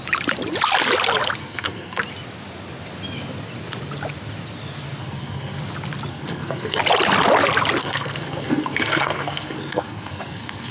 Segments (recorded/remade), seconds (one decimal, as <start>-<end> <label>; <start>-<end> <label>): 0.0-1.4 recorded; 1.4-2.0 remade; 2.0-5.0 recorded; 5.0-5.6 remade; 5.6-6.1 recorded; 6.1-6.8 remade; 6.8-7.8 recorded; 7.8-10.7 remade